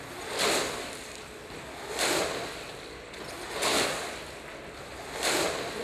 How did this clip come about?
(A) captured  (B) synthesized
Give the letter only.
A